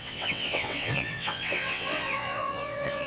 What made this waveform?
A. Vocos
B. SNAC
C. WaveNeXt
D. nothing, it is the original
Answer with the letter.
C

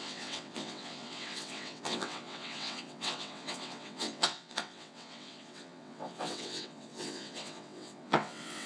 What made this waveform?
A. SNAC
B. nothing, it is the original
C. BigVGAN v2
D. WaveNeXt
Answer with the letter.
D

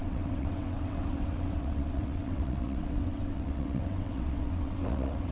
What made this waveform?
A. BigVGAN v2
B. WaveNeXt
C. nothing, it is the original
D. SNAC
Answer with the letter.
B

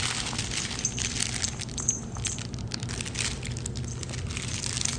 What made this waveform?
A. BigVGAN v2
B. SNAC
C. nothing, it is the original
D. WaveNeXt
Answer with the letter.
C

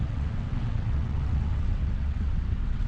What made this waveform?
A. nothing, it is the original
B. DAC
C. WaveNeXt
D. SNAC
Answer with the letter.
C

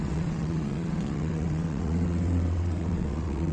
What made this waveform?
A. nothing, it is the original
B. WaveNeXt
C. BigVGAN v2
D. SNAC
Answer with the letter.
B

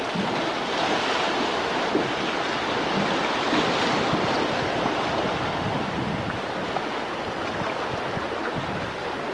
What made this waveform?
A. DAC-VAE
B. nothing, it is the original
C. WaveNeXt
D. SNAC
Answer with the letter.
B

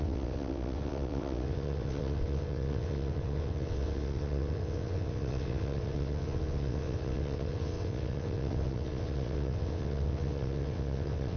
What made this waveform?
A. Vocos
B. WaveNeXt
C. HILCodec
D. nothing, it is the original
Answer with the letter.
B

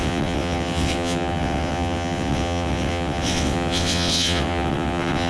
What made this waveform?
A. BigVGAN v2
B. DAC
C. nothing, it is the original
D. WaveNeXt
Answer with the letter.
D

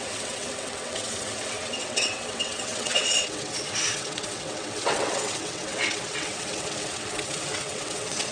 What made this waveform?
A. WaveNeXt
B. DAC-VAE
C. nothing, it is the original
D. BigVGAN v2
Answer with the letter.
A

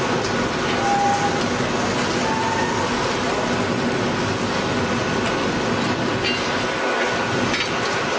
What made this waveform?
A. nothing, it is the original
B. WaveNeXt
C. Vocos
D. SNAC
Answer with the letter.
A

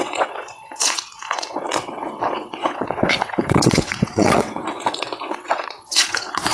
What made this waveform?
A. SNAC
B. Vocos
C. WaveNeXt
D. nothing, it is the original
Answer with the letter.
C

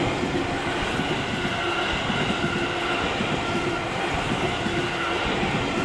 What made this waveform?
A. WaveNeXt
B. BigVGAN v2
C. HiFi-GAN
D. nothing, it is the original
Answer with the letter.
D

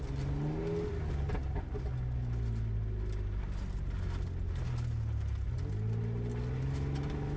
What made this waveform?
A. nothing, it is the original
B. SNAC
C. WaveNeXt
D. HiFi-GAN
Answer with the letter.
A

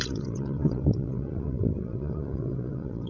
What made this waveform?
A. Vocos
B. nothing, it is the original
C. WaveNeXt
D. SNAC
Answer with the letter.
C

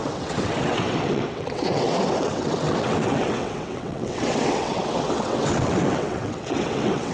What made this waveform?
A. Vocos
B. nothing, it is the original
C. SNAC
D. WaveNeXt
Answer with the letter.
D